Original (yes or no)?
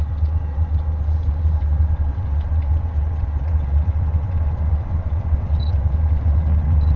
no